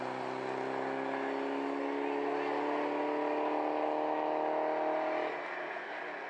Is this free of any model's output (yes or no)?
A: yes